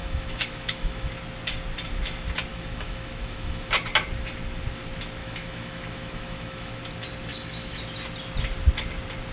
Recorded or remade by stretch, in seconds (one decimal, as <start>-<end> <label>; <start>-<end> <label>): 0.0-1.1 remade; 1.1-2.5 recorded; 2.5-3.7 remade; 3.7-5.2 recorded; 5.2-6.8 remade; 6.8-7.3 recorded; 7.3-7.8 remade; 7.8-9.3 recorded